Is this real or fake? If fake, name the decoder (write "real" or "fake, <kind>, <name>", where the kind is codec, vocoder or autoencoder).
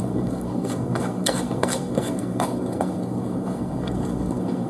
fake, codec, SNAC